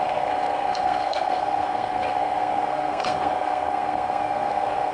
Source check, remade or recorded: remade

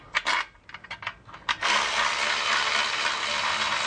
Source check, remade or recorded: recorded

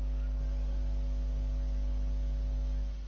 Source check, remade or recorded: recorded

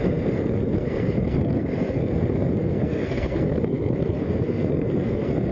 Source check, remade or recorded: remade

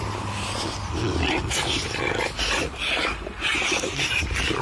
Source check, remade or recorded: recorded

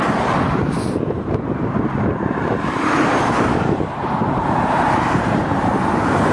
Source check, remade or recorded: remade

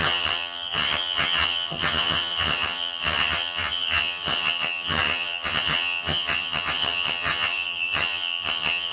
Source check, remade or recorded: remade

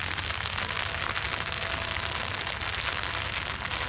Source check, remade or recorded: recorded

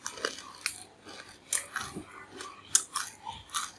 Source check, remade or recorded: recorded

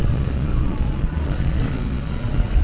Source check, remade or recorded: remade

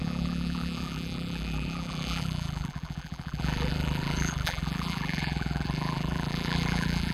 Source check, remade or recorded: remade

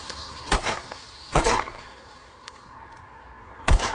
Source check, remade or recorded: remade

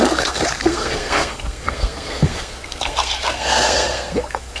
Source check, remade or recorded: remade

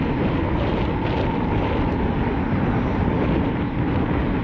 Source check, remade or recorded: recorded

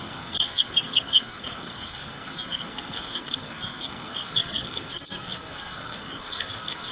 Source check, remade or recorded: remade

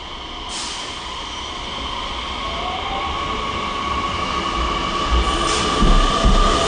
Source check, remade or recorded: recorded